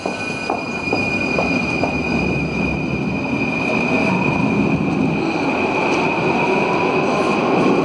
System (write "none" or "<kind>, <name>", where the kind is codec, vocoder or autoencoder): none